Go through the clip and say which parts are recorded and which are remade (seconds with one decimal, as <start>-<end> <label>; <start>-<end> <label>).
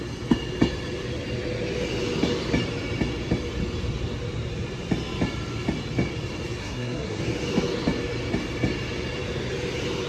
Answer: 0.0-6.6 recorded; 6.6-7.2 remade; 7.2-10.1 recorded